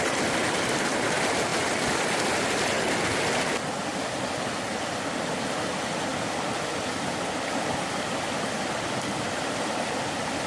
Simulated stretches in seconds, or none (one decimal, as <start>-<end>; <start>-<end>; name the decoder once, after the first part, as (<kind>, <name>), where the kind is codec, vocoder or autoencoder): none